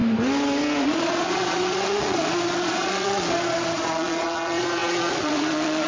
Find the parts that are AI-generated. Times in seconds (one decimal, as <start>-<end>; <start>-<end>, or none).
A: 0.8-5.9